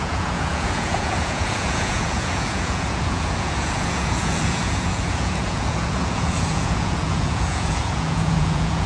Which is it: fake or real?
fake